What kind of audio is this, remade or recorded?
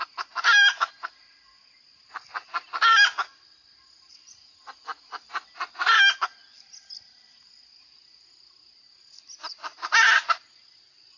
recorded